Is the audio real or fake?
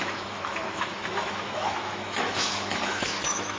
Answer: fake